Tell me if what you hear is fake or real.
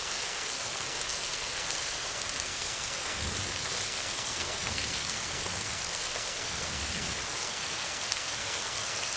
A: fake